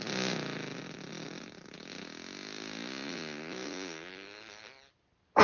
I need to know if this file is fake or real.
real